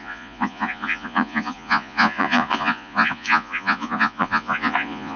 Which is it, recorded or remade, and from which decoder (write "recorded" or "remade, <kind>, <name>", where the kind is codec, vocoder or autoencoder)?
remade, vocoder, Vocos